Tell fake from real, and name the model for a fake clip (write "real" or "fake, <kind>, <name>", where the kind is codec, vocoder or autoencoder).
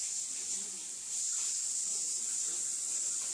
real